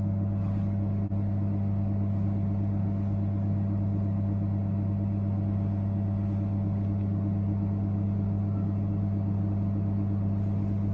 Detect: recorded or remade recorded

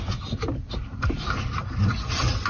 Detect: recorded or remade recorded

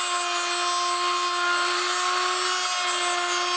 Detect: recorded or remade recorded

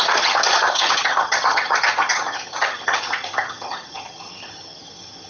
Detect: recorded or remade remade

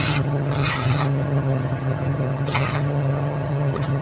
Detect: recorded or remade remade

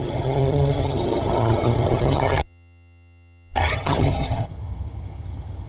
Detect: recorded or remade remade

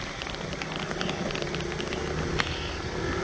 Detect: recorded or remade recorded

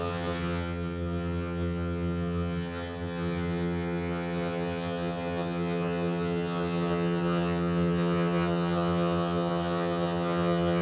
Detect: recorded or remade remade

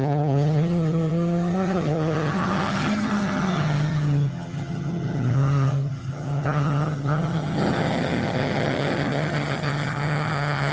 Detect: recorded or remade remade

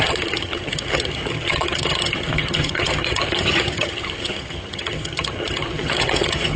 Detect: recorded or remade remade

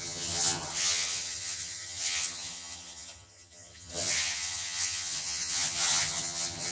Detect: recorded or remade remade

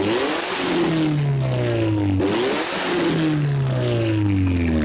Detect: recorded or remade recorded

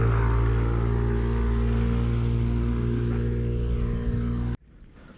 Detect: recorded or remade recorded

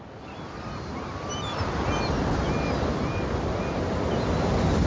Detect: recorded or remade recorded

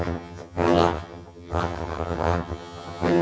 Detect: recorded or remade remade